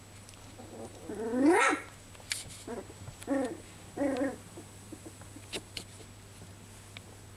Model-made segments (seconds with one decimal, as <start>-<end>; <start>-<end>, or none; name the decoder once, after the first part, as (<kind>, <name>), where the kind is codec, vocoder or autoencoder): none